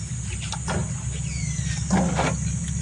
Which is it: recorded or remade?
recorded